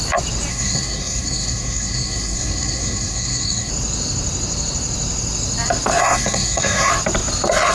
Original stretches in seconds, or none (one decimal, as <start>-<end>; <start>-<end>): 0.0-0.5; 3.7-6.0; 6.9-7.7